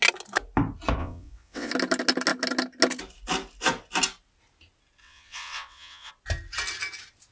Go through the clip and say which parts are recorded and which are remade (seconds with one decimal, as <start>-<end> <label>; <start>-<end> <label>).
0.0-1.0 recorded; 1.0-1.7 remade; 1.7-5.0 recorded; 5.0-6.1 remade; 6.1-7.3 recorded